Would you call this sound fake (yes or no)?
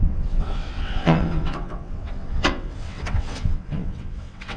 yes